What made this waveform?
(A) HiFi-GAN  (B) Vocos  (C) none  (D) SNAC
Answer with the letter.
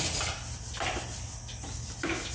C